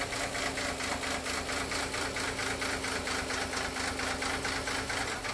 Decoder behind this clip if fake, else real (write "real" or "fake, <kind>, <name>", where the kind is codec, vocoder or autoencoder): real